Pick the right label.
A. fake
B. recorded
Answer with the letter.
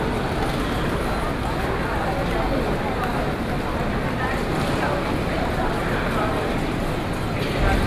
B